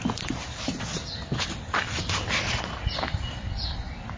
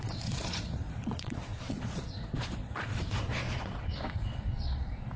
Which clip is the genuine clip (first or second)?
first